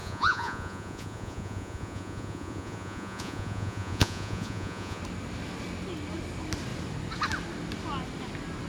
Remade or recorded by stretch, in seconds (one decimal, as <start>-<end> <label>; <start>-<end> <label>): 0.0-5.0 remade; 5.0-8.7 recorded